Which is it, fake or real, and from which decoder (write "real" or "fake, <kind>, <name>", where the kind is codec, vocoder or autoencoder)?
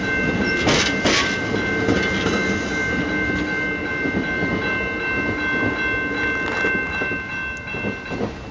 real